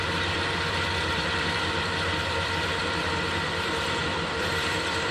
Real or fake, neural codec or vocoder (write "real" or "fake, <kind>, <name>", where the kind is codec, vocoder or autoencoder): fake, vocoder, BigVGAN v2